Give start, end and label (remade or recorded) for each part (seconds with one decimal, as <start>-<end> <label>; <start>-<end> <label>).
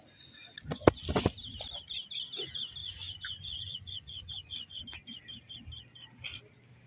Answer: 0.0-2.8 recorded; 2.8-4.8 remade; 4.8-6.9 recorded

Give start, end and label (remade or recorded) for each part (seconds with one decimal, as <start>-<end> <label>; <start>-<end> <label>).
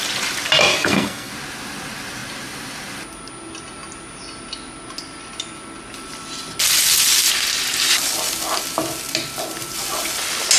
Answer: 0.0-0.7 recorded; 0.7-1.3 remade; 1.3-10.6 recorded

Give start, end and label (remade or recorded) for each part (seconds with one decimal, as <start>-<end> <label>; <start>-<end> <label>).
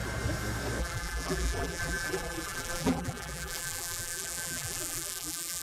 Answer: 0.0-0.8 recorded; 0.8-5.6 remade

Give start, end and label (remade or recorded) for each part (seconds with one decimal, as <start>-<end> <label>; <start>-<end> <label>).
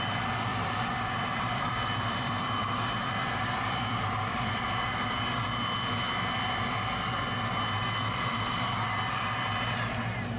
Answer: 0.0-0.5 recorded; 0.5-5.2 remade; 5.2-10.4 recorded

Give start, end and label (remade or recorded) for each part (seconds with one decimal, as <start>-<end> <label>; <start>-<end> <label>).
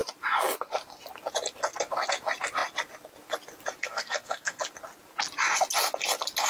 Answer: 0.0-3.8 recorded; 3.8-4.6 remade; 4.6-6.5 recorded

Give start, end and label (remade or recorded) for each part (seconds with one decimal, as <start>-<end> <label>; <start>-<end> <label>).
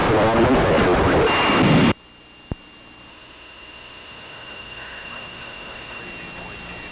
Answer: 0.0-3.1 recorded; 3.1-6.0 remade; 6.0-6.9 recorded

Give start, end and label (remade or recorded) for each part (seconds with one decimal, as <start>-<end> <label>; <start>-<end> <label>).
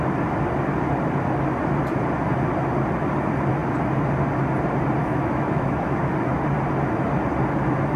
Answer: 0.0-5.0 recorded; 5.0-6.1 remade; 6.1-8.0 recorded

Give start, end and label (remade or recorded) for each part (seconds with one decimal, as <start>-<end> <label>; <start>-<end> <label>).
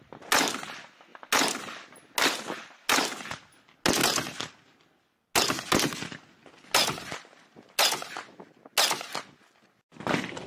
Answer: 0.0-10.5 recorded